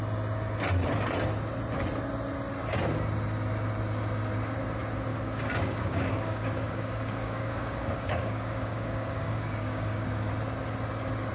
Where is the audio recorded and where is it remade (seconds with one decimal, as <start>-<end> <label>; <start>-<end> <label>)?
0.0-5.1 recorded; 5.1-10.3 remade; 10.3-11.3 recorded